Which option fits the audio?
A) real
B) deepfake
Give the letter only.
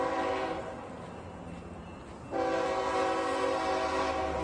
A